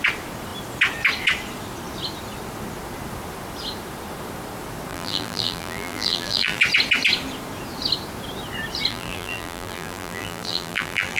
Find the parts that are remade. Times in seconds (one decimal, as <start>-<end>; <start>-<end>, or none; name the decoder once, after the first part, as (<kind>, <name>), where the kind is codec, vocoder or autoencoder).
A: 4.9-6.6 (vocoder, BigVGAN v2); 8.9-11.2